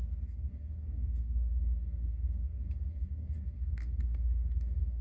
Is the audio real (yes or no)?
no